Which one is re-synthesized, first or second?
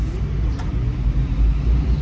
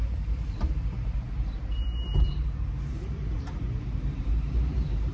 second